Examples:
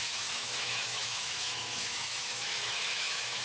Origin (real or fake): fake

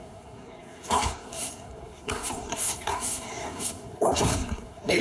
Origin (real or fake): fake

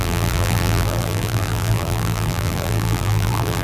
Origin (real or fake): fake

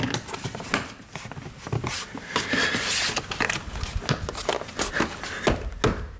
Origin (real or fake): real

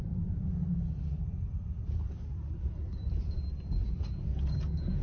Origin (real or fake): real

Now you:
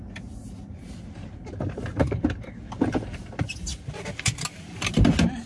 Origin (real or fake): real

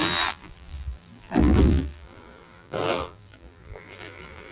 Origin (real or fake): fake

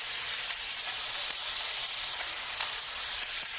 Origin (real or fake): fake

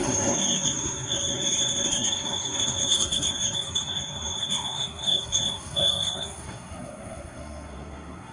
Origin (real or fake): fake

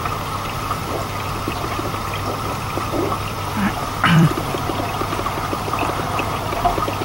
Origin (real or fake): fake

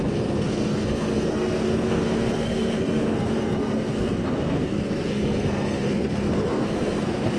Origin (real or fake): fake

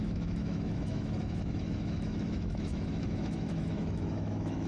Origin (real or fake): fake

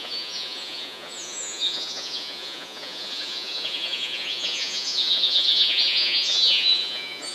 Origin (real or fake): fake